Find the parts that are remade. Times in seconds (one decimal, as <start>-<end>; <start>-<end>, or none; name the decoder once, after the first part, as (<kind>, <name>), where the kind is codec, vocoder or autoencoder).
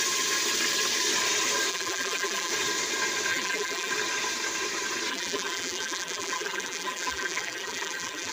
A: 1.7-2.5 (vocoder, BigVGAN v2); 3.3-3.9; 5.1-8.3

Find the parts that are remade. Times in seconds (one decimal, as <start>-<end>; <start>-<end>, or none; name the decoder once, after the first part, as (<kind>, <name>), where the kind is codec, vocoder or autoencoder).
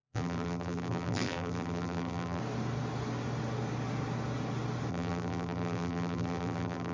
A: 0.0-2.4 (vocoder, BigVGAN v2); 4.9-6.9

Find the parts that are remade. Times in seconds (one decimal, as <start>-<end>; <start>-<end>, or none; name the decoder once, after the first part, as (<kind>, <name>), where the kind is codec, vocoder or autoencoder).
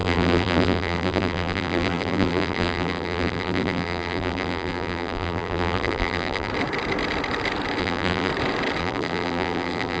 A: 0.0-6.5 (vocoder, BigVGAN v2); 7.8-8.3; 8.8-10.0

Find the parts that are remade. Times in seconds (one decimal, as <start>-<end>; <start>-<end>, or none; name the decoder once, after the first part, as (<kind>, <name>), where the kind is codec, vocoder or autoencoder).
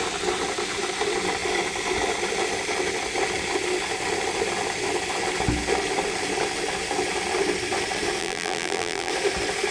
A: 8.2-9.1 (vocoder, BigVGAN v2)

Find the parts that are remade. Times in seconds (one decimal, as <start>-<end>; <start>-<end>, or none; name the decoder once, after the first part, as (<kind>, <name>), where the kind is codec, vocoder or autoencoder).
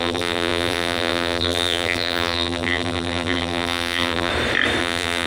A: 0.0-4.3 (vocoder, BigVGAN v2); 4.8-5.3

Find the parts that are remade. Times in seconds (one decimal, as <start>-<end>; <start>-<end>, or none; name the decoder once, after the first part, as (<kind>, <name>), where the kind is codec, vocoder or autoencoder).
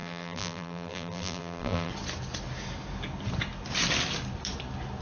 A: 0.0-1.9 (vocoder, BigVGAN v2)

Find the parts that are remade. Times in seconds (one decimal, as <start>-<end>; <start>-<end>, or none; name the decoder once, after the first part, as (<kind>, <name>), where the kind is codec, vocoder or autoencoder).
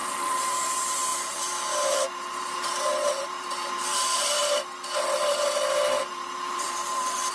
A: 0.0-4.4 (vocoder, BigVGAN v2); 6.1-7.3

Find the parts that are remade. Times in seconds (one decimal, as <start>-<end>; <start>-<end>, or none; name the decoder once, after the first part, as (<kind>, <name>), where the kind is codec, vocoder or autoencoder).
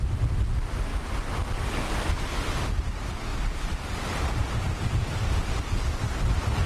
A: none